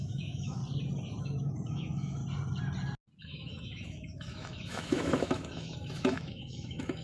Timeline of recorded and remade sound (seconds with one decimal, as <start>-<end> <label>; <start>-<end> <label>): 0.0-0.6 remade; 0.6-1.2 recorded; 1.2-2.2 remade; 2.2-3.2 recorded; 3.2-7.0 remade